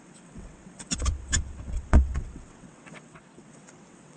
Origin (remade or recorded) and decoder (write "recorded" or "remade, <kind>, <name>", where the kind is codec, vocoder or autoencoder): remade, vocoder, WaveNeXt